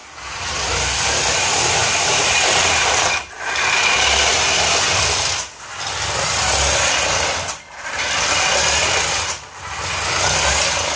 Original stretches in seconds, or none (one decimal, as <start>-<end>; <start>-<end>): 0.0-1.8; 3.5-11.0